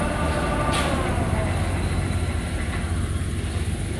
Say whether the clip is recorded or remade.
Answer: recorded